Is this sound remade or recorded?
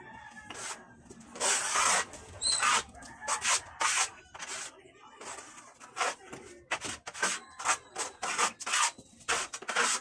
recorded